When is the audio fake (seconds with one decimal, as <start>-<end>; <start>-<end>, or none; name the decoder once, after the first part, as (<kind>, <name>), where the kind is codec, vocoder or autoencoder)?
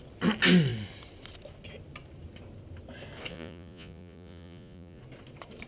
3.3-5.0 (vocoder, Vocos)